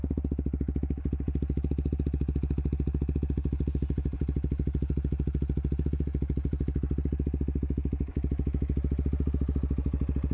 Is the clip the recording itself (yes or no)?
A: yes